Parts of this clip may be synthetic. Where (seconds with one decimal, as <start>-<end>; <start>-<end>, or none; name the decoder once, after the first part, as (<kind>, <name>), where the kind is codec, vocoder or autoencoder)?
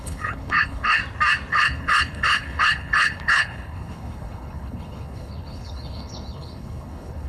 0.0-1.0 (codec, HILCodec); 1.5-7.3